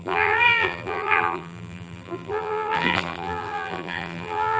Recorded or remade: remade